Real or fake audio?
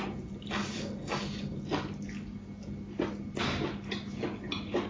real